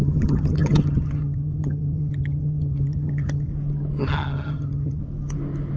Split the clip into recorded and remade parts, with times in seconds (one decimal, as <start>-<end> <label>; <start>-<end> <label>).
0.0-3.5 remade; 3.5-4.0 recorded; 4.0-5.0 remade; 5.0-5.8 recorded